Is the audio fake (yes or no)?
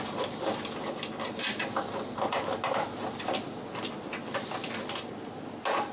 no